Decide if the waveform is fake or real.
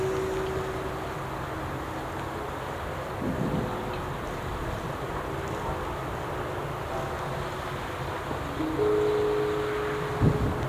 real